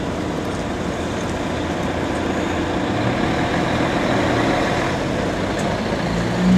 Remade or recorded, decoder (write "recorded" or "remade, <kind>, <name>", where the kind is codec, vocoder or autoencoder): recorded